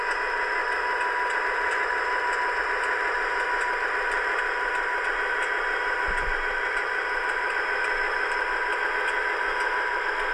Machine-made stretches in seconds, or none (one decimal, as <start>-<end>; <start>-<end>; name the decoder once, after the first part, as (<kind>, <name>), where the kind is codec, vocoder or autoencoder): 0.0-0.6 (vocoder, BigVGAN v2); 1.4-8.7; 9.4-10.3